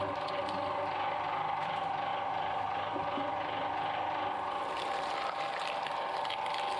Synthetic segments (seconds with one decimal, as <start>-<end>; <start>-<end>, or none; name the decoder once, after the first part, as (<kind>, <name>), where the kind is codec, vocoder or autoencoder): none

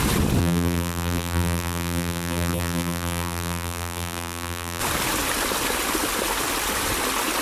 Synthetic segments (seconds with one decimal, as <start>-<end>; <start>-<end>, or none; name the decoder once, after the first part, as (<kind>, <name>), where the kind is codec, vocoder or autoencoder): 0.4-4.8 (vocoder, BigVGAN v2)